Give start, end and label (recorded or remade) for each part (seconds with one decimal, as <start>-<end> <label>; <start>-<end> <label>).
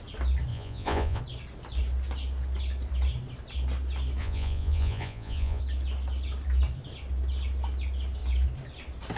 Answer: 0.0-0.5 recorded; 0.5-1.2 remade; 1.2-4.2 recorded; 4.2-5.6 remade; 5.6-9.2 recorded